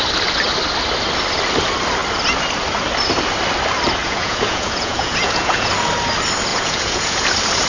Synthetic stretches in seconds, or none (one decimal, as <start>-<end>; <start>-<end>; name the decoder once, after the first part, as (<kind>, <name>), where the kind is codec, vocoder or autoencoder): 4.0-5.7 (vocoder, Vocos); 6.5-7.3